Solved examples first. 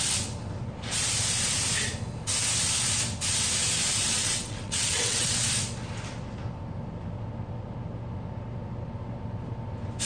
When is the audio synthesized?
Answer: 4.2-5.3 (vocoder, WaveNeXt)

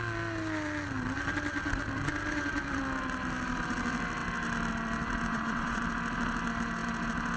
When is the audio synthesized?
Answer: 5.3-5.8 (vocoder, WaveNeXt)

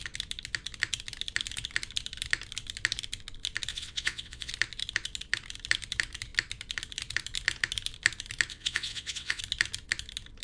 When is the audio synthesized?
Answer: 3.7-4.5 (vocoder, WaveNeXt); 8.5-9.4